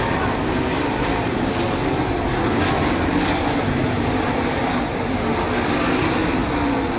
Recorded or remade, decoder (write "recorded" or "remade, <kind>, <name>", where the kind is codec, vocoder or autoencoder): recorded